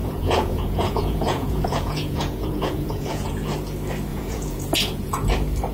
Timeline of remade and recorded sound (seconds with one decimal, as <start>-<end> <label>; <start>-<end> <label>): 0.0-3.4 remade; 3.4-4.1 recorded; 4.1-5.3 remade; 5.3-5.7 recorded